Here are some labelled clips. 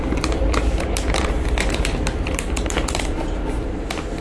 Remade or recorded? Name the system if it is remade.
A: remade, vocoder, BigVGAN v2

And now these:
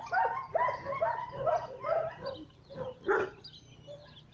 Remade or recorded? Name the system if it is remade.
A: recorded